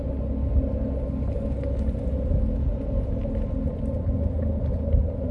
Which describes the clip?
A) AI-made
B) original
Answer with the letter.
B